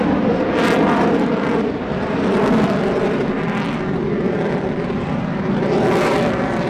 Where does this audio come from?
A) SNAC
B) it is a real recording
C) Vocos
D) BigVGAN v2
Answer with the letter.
B